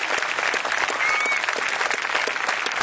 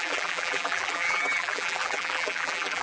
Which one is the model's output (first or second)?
second